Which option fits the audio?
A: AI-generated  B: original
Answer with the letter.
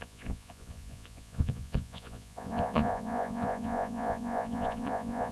A